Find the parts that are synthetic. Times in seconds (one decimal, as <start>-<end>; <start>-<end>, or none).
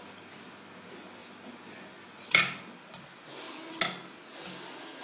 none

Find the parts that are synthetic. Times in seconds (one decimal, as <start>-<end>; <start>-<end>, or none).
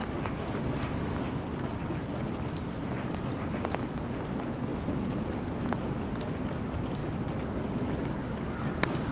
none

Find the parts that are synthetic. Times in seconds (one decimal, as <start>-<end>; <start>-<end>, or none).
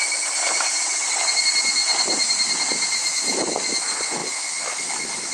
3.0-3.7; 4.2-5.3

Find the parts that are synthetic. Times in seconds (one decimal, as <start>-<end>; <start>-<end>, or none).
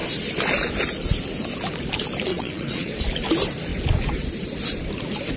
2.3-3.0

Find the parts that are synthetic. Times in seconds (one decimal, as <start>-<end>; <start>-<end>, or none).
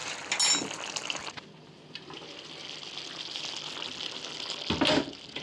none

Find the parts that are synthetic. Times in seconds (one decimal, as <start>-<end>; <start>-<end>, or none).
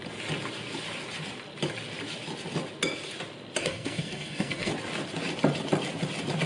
3.6-4.7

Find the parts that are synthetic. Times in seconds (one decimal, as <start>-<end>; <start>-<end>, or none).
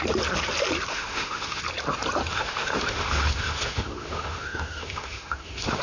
0.9-1.6; 2.3-5.8